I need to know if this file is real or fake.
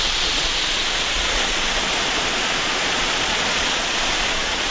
fake